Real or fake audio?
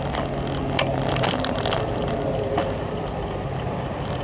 real